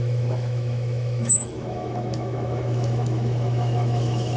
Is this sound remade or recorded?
remade